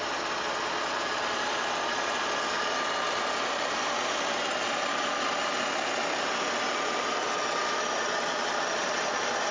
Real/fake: real